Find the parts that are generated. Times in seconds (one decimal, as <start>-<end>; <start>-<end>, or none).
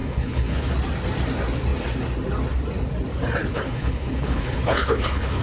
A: 0.0-0.7; 3.4-5.4